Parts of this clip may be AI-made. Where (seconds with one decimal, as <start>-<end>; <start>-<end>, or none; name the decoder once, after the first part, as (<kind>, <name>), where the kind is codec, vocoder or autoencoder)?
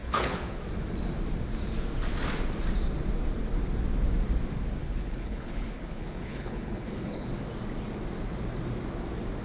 0.0-0.6 (codec, HILCodec); 4.8-7.3